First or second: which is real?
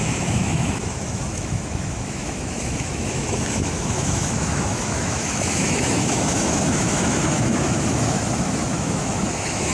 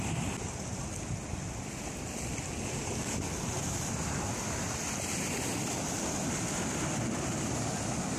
second